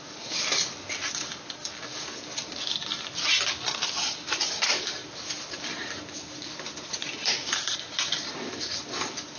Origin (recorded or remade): recorded